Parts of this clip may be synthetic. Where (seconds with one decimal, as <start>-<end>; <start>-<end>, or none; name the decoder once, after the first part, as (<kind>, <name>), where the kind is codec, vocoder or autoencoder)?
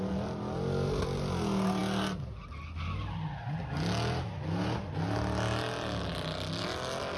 none